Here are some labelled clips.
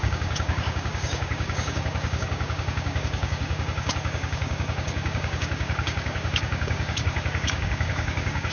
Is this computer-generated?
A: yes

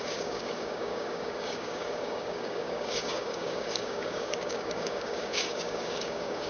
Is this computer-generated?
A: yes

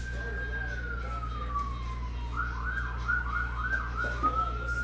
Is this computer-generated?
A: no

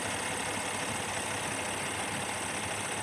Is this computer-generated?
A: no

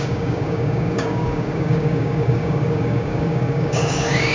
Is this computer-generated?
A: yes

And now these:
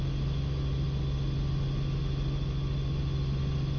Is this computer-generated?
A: no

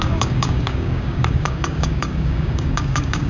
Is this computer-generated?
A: yes